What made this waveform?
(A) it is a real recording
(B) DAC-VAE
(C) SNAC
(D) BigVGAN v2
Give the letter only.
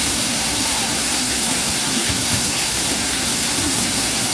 C